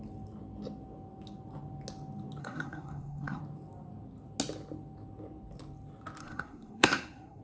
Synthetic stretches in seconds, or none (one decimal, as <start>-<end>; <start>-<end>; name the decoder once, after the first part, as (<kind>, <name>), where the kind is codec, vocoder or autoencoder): 2.4-3.4 (codec, SNAC); 6.2-7.4